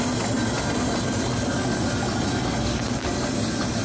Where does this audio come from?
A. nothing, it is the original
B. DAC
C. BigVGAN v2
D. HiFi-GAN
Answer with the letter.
A